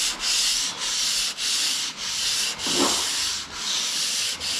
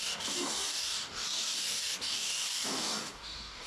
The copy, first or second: second